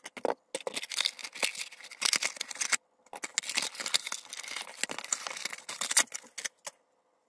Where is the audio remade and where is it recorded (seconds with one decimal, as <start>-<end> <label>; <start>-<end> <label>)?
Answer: 0.0-7.3 recorded